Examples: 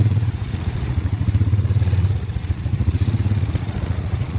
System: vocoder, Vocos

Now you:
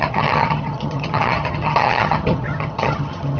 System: vocoder, HiFi-GAN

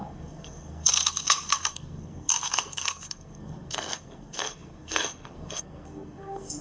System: codec, SNAC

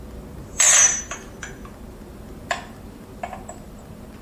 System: vocoder, BigVGAN v2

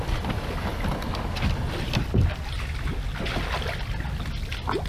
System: none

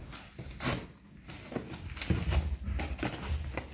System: none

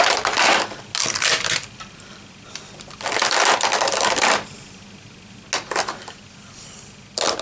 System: none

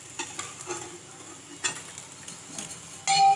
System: none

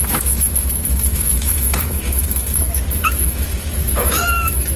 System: autoencoder, DAC-VAE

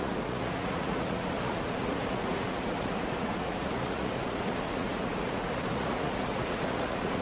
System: vocoder, Vocos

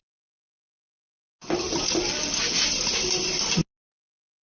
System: none